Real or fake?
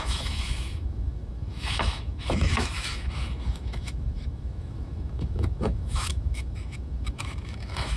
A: fake